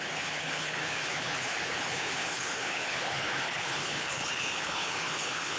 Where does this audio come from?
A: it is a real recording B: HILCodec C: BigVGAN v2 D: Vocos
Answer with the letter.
B